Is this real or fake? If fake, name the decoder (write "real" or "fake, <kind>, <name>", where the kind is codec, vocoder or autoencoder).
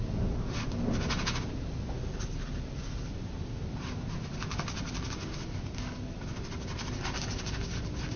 real